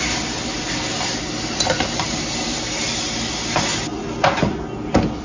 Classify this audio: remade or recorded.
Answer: recorded